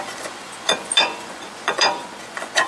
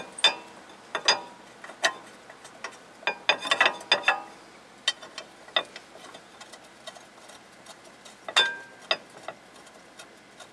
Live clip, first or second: second